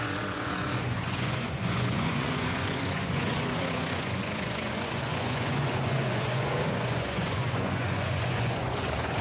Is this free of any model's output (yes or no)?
no